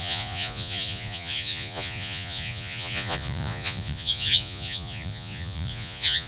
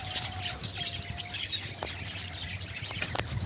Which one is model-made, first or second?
first